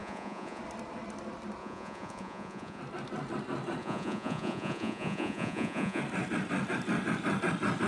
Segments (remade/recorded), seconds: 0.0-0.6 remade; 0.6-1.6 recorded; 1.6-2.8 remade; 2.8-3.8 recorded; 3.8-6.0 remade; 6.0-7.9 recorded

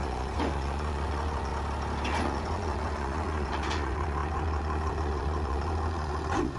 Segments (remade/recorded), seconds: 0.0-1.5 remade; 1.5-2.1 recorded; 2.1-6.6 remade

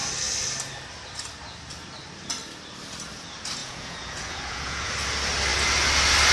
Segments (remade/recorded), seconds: 0.0-3.6 recorded; 3.6-4.9 remade; 4.9-6.3 recorded

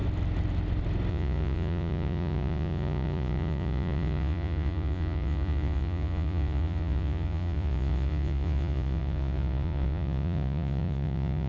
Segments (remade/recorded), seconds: 0.0-1.1 recorded; 1.1-11.5 remade

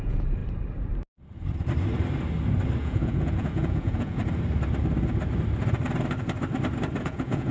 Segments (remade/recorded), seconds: 0.0-0.4 remade; 0.4-2.8 recorded; 2.8-4.2 remade; 4.2-7.0 recorded; 7.0-7.5 remade